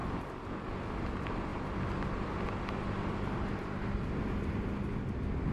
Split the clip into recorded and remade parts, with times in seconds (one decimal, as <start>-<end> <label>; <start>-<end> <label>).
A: 0.0-0.6 remade; 0.6-1.5 recorded; 1.5-2.5 remade; 2.5-5.5 recorded